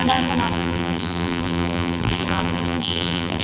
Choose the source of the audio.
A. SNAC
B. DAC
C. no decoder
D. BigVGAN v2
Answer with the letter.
D